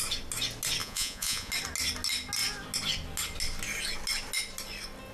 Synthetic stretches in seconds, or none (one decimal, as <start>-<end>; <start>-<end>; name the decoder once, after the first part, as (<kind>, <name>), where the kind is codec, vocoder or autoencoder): 0.8-1.5 (vocoder, Vocos)